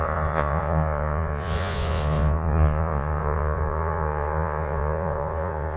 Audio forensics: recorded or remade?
remade